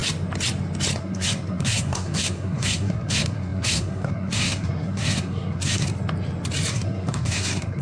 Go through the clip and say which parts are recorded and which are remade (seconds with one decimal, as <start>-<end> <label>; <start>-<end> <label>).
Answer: 0.0-1.0 recorded; 1.0-5.9 remade; 5.9-6.7 recorded; 6.7-7.8 remade